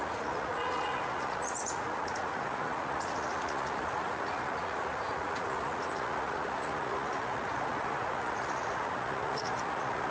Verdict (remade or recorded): remade